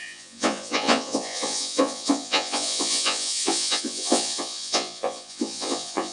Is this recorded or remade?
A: remade